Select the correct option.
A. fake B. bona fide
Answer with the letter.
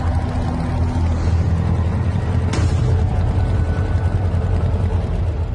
B